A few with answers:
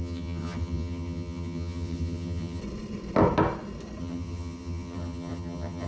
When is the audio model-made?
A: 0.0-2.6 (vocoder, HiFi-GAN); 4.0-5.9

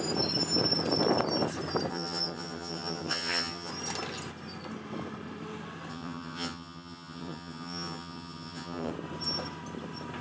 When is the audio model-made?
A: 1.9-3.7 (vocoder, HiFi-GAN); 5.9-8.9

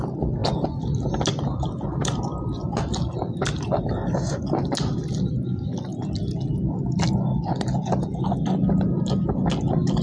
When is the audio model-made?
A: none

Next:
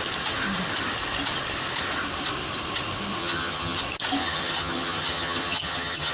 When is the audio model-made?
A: 3.2-3.8 (vocoder, HiFi-GAN); 4.2-6.1